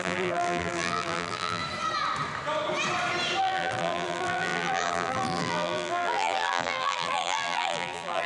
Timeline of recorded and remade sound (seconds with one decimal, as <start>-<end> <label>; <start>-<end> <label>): 0.0-1.6 remade; 1.6-3.4 recorded; 3.4-8.3 remade